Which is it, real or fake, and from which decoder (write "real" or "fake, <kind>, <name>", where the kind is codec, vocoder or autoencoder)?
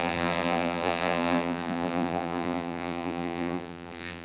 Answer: fake, vocoder, BigVGAN v2